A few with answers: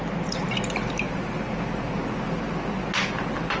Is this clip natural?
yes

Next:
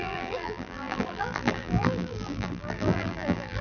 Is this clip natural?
no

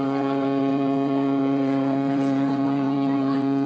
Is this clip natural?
no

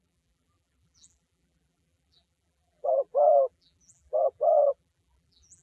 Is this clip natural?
no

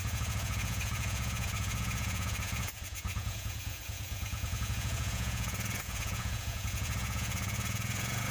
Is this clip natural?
no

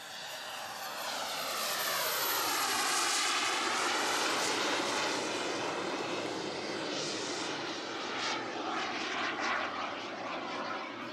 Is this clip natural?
no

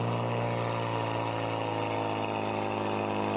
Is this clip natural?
yes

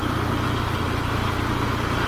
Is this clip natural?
yes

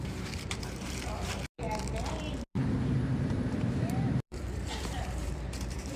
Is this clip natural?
no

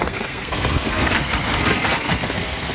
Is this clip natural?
no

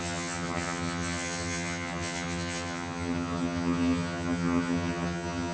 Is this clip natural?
no